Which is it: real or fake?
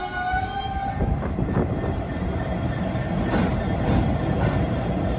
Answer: fake